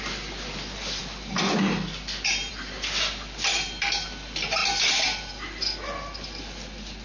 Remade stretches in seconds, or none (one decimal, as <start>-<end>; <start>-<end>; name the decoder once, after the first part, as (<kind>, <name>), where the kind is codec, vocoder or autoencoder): none